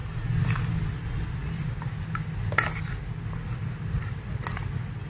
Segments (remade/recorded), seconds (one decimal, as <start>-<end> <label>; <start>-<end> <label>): 0.0-5.1 recorded